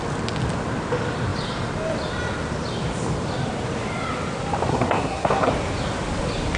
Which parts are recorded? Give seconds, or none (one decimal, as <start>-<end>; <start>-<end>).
0.0-4.7; 5.5-6.6